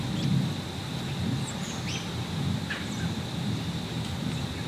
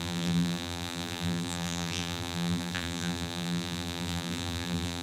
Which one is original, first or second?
first